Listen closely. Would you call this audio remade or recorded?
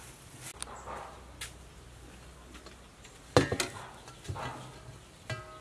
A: recorded